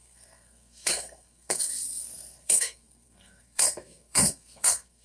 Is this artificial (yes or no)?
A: yes